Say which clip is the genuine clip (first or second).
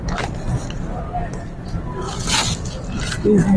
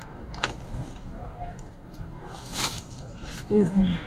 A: first